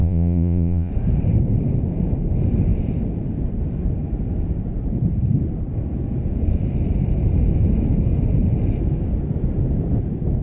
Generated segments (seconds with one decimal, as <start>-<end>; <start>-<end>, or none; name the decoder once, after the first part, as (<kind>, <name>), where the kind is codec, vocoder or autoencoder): 0.0-0.9 (vocoder, Vocos)